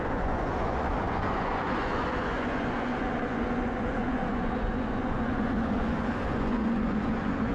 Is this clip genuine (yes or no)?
no